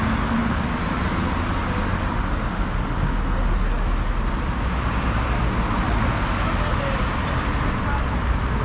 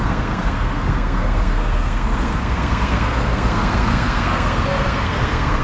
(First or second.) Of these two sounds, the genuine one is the first